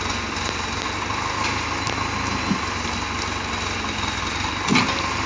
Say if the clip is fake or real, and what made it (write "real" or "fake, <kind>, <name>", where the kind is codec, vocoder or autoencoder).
real